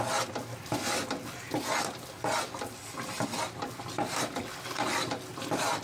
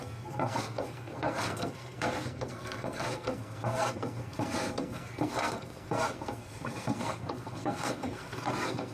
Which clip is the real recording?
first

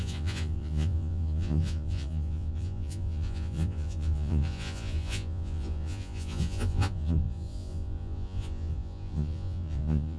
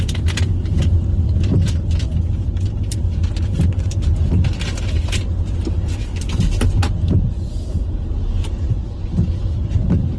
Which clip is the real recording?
second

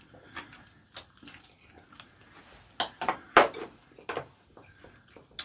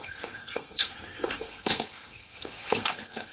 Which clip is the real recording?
first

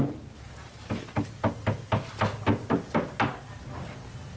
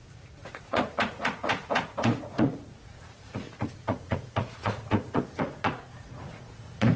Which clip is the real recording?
first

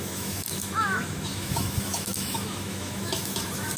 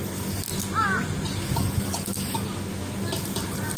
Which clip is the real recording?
second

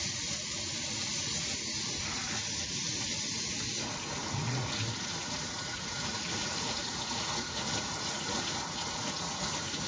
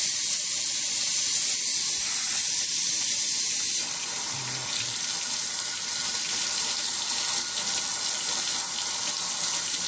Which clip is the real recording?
second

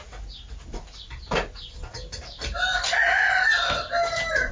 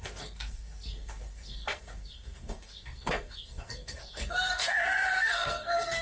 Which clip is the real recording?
first